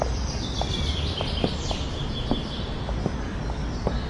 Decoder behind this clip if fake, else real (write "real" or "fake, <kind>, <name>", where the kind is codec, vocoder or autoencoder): fake, vocoder, BigVGAN v2